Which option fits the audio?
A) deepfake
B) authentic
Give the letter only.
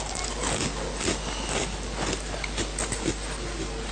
B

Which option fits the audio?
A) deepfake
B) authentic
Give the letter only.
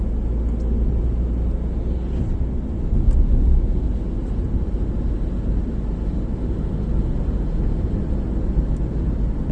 B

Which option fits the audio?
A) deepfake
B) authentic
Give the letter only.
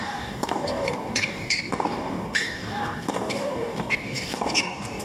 A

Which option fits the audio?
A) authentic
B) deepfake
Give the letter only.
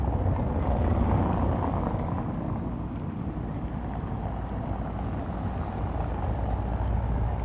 A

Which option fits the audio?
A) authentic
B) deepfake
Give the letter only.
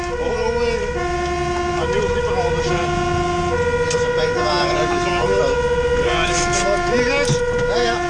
A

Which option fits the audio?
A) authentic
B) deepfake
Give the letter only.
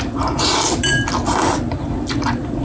A